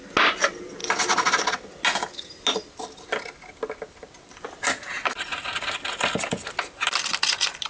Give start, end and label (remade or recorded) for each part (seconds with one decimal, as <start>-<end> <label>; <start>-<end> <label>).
0.0-7.7 recorded